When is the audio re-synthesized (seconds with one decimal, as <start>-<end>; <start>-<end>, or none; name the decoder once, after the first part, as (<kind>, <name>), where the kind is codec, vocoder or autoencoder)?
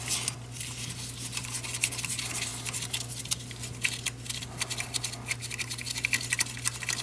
none